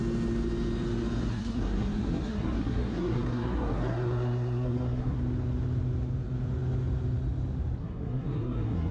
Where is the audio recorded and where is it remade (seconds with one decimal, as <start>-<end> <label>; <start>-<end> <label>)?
0.0-1.3 recorded; 1.3-5.2 remade; 5.2-7.8 recorded; 7.8-8.9 remade